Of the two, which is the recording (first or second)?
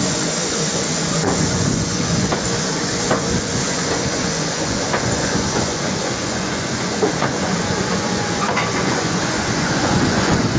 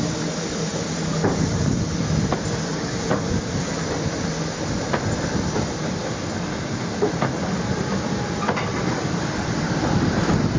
second